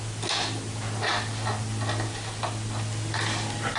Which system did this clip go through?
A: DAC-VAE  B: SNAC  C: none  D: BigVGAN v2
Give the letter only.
C